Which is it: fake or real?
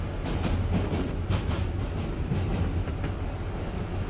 real